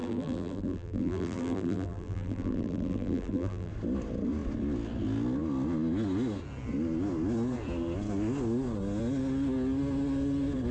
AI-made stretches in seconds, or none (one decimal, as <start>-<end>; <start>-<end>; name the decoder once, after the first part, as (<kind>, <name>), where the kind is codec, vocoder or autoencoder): 0.0-3.7 (vocoder, BigVGAN v2)